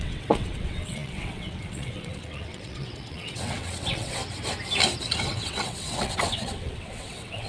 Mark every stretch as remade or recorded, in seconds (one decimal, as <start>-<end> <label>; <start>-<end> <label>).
0.0-4.2 remade; 4.2-5.2 recorded; 5.2-7.5 remade